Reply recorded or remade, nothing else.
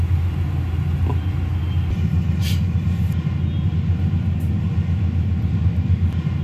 recorded